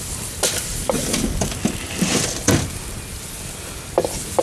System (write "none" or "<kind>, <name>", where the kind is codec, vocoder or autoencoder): none